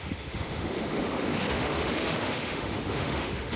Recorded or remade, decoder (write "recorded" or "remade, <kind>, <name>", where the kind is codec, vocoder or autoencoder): remade, autoencoder, DAC-VAE